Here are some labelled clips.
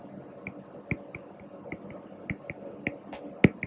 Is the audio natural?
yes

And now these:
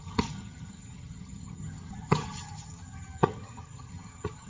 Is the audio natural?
no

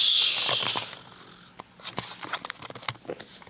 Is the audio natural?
yes